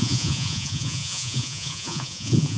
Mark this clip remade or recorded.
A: remade